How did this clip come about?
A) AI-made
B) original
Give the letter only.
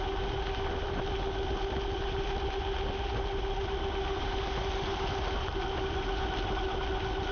B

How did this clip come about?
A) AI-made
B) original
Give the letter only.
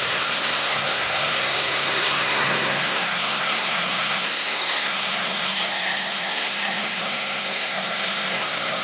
A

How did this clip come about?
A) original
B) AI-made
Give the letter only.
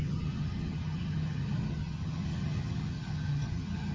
B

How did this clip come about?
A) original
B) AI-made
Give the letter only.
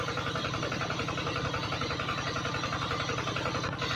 A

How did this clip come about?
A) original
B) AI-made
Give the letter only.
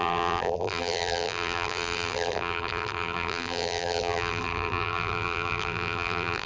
B